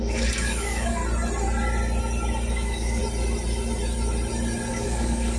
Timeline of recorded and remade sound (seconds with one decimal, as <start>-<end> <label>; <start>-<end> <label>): 0.0-1.0 remade; 1.0-2.5 recorded; 2.5-3.0 remade; 3.0-4.7 recorded; 4.7-5.4 remade